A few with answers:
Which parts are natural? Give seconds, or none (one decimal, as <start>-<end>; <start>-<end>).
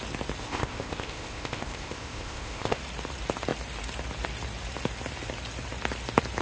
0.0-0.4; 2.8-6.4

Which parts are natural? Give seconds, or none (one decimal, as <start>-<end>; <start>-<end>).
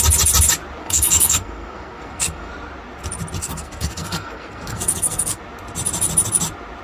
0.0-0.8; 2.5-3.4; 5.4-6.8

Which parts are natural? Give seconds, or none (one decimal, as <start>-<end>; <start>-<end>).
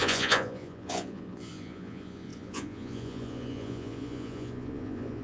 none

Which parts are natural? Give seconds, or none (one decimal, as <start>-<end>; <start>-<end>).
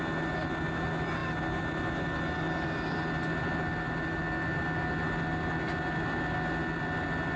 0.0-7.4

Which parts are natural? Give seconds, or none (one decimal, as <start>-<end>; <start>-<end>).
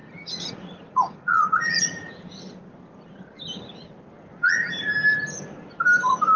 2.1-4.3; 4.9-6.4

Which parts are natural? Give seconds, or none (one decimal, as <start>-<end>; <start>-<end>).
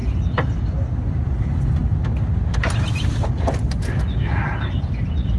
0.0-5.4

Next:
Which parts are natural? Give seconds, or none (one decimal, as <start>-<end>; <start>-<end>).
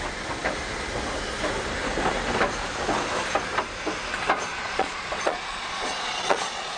0.0-4.5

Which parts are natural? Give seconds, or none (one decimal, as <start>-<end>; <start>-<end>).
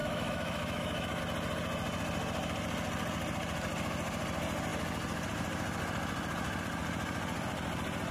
1.2-8.1